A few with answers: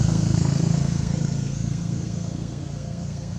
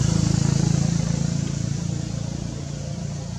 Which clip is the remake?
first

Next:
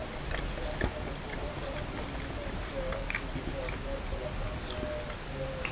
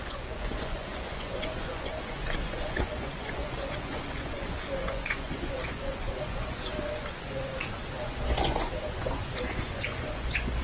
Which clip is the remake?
second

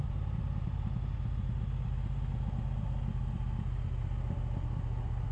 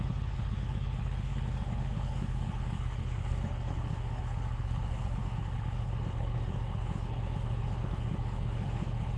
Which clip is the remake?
second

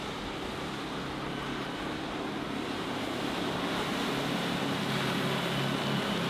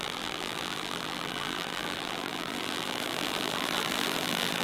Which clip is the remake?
second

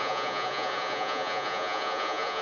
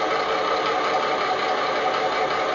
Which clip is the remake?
first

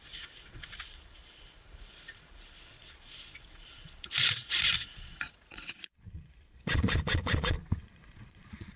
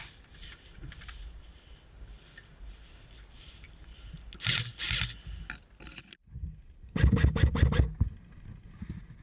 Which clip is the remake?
first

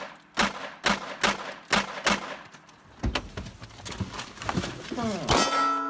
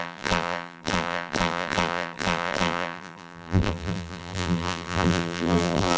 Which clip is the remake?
second